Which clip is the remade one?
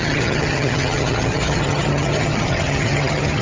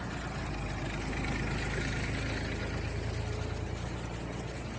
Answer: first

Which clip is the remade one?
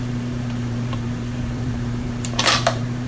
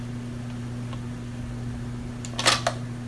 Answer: first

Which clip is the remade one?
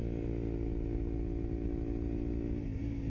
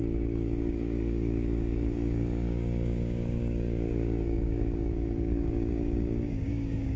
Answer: second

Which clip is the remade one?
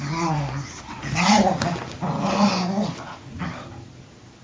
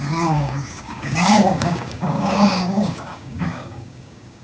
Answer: second